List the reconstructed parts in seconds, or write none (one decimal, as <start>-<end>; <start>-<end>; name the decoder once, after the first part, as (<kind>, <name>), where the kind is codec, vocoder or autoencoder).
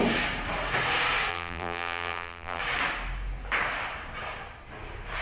1.3-2.6 (vocoder, BigVGAN v2)